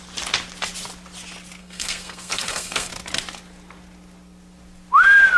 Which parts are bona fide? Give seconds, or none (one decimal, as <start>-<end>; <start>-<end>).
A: 0.0-1.6; 2.9-5.4